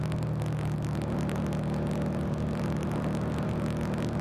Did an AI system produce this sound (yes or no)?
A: no